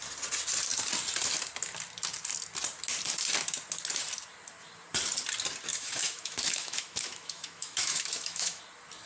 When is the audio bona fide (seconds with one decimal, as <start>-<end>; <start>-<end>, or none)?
0.0-5.7; 8.6-9.1